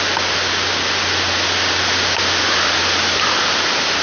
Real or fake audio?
real